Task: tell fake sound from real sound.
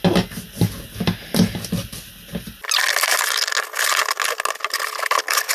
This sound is real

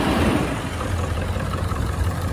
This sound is fake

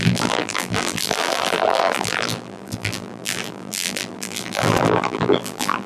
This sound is fake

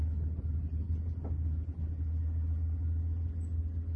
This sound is real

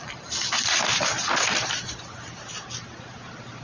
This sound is fake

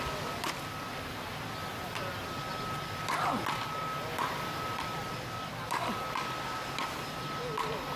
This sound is real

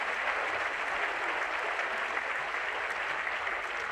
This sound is real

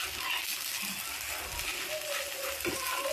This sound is real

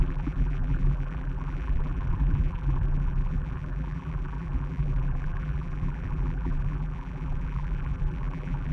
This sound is fake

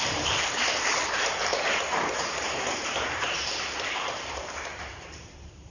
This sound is fake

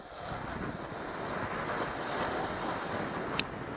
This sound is real